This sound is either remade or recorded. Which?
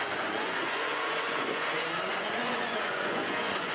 remade